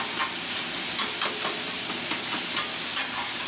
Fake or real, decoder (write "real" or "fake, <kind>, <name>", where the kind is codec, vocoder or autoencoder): real